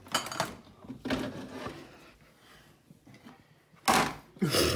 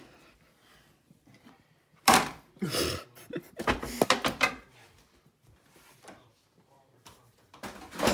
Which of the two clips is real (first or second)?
first